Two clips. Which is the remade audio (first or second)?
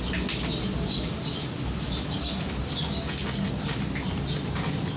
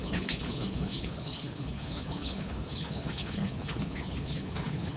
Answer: second